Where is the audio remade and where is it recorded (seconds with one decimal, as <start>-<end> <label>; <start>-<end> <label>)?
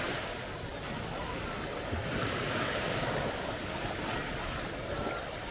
0.0-2.2 recorded; 2.2-3.8 remade; 3.8-5.5 recorded